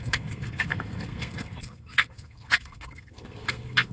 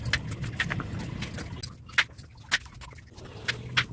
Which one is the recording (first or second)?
second